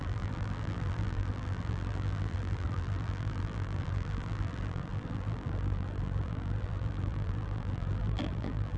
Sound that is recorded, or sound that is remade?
remade